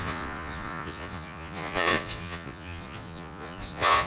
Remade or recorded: remade